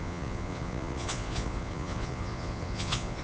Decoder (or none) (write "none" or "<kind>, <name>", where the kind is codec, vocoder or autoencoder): vocoder, Vocos